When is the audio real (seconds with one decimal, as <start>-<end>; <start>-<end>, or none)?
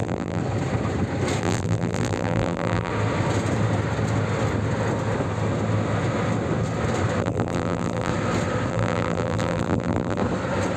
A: 0.4-1.4; 2.9-7.2; 8.1-8.7; 10.2-10.8